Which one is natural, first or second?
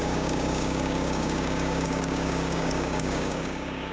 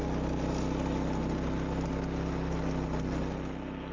second